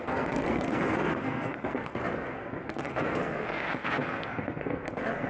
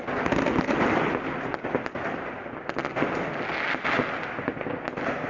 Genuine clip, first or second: second